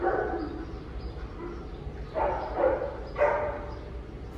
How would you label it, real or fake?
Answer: real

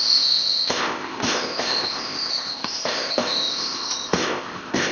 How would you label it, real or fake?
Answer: fake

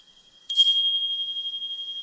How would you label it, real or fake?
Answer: fake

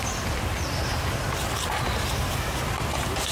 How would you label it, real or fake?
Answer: real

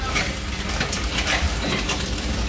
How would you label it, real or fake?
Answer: real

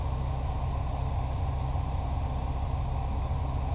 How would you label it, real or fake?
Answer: real